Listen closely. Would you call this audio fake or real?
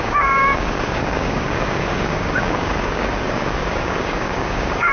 fake